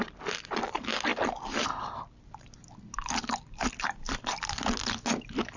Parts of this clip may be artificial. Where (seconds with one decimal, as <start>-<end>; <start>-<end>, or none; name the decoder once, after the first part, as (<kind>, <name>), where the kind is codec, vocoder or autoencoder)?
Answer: none